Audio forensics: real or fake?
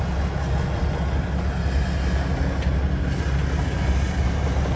real